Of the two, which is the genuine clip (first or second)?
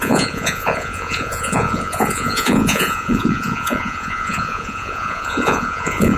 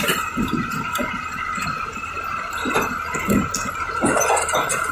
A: second